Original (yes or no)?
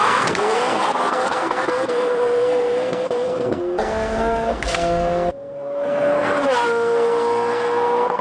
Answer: no